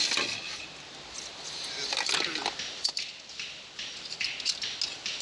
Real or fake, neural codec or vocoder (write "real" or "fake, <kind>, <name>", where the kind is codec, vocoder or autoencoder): real